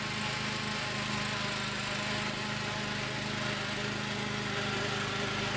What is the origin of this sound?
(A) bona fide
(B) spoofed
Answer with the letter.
A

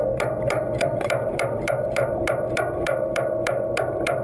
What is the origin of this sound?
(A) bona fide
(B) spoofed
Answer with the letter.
B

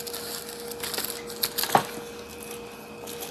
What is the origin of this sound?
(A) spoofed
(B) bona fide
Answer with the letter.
B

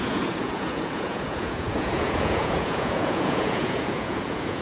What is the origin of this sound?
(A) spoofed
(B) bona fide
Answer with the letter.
A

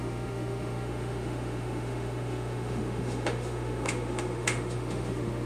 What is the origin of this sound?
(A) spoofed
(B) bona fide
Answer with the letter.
A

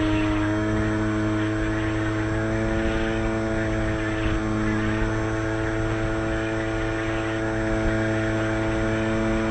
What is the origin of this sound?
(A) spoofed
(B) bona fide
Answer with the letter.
B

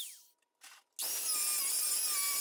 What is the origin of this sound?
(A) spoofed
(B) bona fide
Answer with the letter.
B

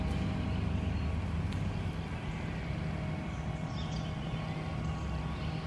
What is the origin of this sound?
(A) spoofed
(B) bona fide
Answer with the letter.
B